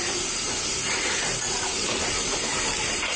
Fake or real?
real